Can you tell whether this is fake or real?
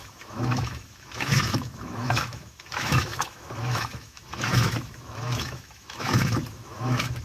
fake